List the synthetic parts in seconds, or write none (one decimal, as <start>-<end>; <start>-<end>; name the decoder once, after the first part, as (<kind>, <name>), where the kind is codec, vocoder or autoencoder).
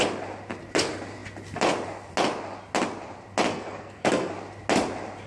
3.5-4.3 (codec, SNAC)